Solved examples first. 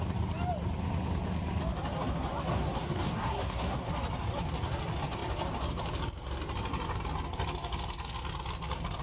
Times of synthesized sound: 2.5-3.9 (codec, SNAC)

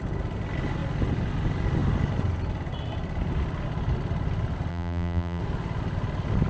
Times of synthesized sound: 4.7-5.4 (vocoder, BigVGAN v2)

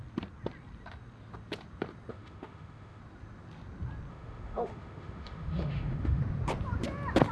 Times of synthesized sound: 2.1-3.0 (autoencoder, DAC-VAE); 4.1-6.2

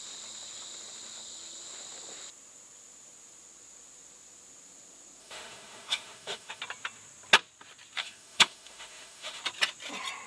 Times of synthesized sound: 5.2-6.6 (autoencoder, DAC-VAE); 8.0-9.4

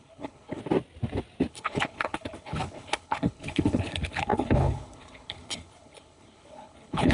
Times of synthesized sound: 0.0-0.6 (codec, HILCodec); 1.5-7.1